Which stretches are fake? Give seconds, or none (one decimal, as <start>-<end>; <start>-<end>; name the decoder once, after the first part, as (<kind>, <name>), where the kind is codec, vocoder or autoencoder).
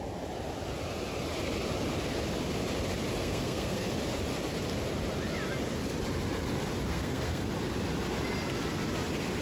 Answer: 3.2-3.9 (codec, SNAC); 6.9-7.5